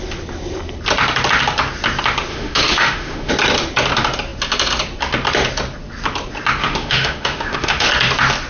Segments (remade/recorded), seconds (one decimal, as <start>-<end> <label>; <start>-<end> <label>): 0.0-2.3 recorded; 2.3-3.3 remade; 3.3-6.6 recorded; 6.6-7.9 remade; 7.9-8.5 recorded